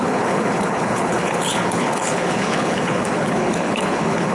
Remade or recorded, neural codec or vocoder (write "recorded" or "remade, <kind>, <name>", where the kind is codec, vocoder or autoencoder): remade, codec, HILCodec